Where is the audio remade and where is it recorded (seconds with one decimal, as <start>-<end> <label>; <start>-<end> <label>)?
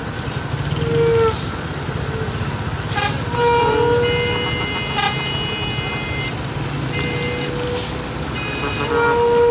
0.0-9.5 recorded